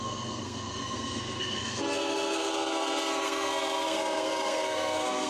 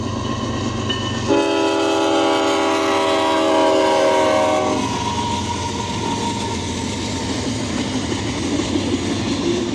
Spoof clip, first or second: first